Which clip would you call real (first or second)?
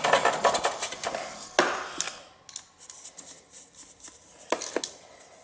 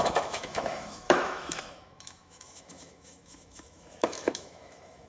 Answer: first